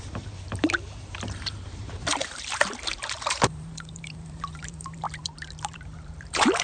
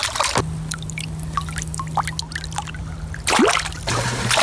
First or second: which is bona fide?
second